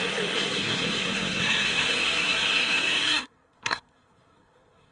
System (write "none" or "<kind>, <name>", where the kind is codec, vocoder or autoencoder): codec, SNAC